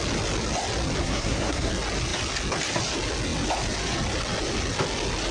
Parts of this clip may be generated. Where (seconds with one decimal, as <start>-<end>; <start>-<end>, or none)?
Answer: 1.0-1.7